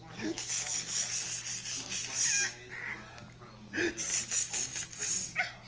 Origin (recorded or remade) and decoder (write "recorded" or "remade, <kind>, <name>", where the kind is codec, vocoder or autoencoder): recorded